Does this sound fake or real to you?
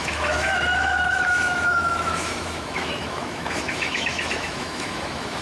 fake